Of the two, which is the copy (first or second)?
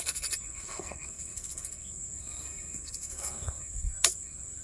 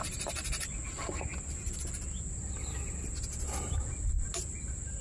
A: first